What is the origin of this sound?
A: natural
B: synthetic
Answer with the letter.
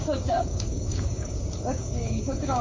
B